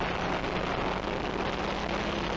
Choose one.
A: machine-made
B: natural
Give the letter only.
B